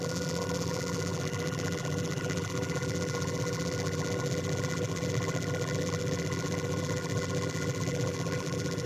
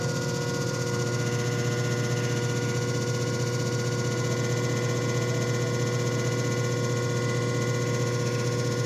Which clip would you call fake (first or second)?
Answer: first